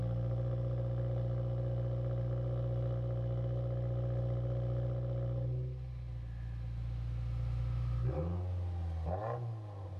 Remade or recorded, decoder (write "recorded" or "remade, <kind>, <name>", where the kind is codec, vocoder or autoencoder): recorded